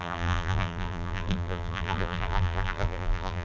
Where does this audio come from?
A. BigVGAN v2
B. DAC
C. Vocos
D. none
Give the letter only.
A